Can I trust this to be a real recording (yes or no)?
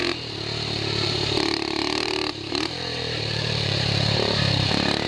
no